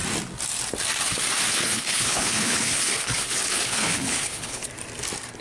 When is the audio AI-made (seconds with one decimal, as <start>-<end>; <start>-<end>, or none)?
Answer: 1.5-4.7